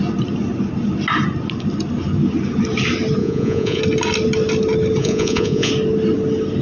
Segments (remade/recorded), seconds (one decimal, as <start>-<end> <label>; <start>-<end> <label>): 0.0-3.2 recorded; 3.2-3.8 remade; 3.8-5.0 recorded; 5.0-5.7 remade; 5.7-6.6 recorded